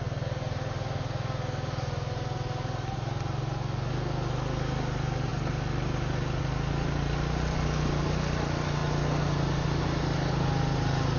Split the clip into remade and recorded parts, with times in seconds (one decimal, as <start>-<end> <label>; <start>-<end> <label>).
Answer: 0.0-11.2 recorded